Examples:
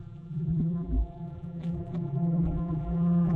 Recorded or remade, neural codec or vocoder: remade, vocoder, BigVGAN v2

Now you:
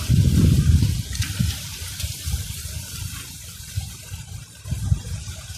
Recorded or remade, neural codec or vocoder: remade, vocoder, BigVGAN v2